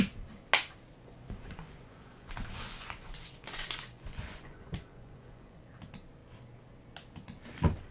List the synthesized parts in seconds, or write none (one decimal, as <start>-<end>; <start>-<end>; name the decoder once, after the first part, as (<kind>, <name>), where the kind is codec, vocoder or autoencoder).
0.9-5.6 (vocoder, Vocos)